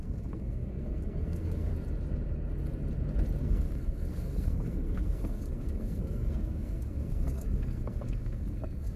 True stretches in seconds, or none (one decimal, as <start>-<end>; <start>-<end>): 1.7-3.4